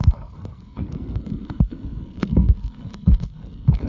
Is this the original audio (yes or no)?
no